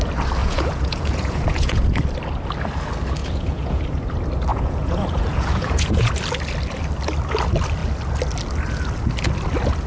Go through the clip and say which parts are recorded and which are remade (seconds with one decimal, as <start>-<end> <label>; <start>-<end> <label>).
0.0-0.4 recorded; 0.4-2.0 remade; 2.0-3.2 recorded; 3.2-3.8 remade; 3.8-4.5 recorded; 4.5-6.1 remade; 6.1-9.9 recorded